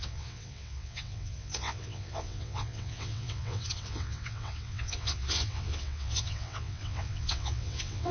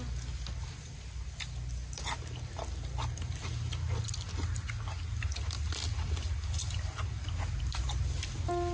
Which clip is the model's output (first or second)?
first